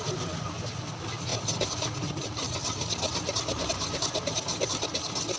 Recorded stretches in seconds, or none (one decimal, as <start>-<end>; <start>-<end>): 0.0-5.4